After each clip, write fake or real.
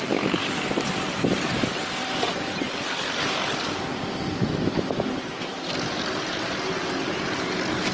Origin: real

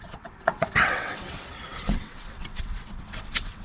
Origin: fake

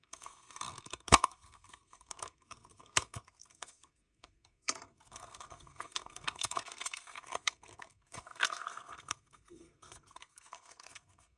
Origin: fake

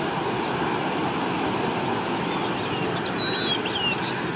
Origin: real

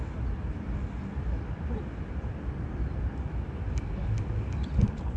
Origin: real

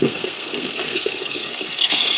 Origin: fake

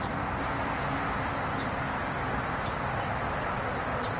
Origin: real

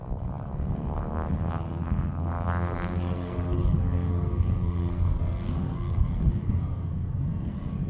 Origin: fake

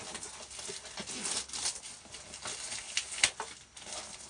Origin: real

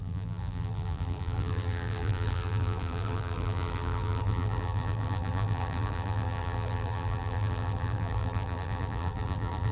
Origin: fake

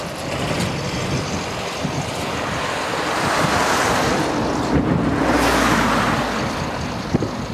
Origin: real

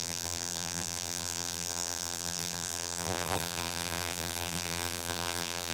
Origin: fake